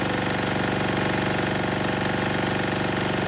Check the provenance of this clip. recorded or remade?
recorded